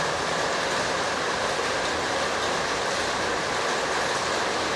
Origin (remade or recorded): recorded